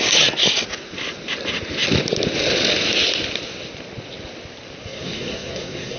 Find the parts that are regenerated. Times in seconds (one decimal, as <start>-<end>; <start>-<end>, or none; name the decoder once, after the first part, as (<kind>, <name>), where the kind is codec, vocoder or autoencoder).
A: 4.8-6.0 (codec, SNAC)